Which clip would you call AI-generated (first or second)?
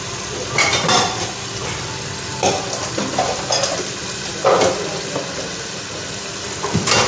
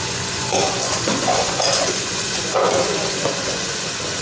second